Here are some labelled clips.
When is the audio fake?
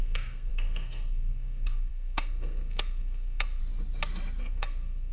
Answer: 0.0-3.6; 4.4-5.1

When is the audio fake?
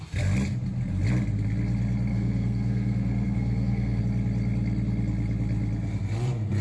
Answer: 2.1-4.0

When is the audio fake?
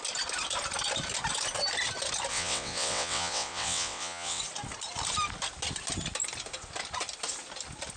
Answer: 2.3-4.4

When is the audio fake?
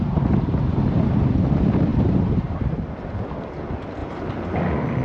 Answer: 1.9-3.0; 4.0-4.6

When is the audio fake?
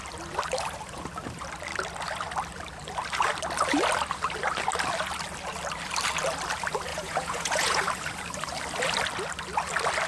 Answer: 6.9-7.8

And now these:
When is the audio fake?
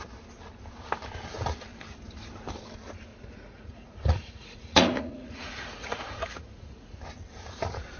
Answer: 3.1-7.0